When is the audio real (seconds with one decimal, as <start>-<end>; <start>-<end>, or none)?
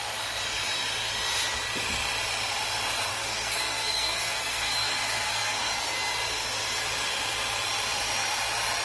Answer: 0.0-3.1; 5.7-8.8